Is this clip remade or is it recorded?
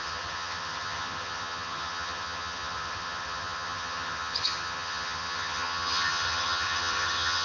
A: remade